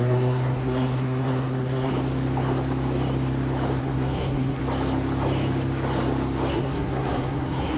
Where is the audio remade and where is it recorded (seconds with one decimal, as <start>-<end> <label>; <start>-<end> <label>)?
0.0-1.9 remade; 1.9-3.8 recorded; 3.8-4.6 remade; 4.6-6.5 recorded; 6.5-7.8 remade